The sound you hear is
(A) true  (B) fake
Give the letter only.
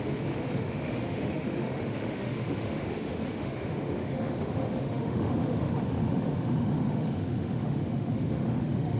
B